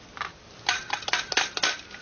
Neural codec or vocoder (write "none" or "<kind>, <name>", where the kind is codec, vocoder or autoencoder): none